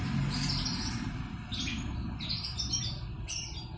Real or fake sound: real